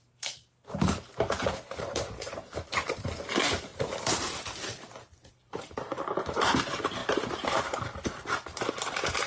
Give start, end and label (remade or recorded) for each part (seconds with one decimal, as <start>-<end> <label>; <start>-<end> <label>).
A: 0.0-3.7 remade; 3.7-5.3 recorded; 5.3-9.3 remade